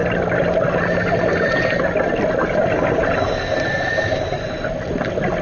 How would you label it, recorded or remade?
recorded